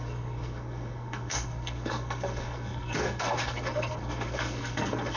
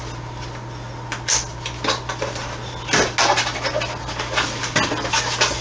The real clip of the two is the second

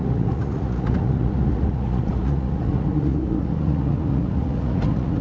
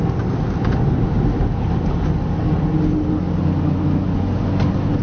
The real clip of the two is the second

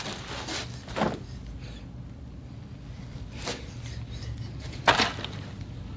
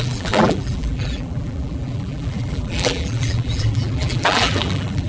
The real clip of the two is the first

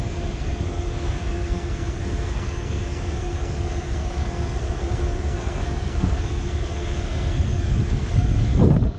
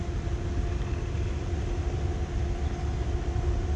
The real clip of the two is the second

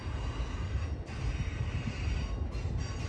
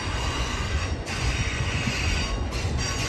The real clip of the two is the first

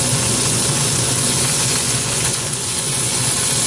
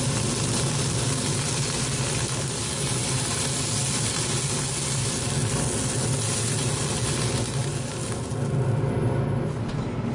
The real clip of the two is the second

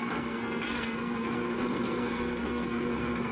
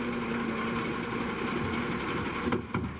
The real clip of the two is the second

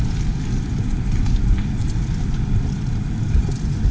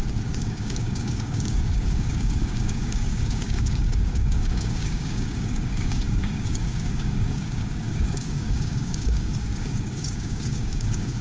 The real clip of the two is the first